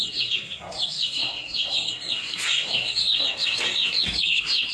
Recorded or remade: remade